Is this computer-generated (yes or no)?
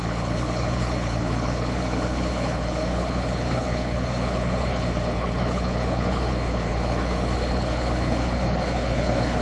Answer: yes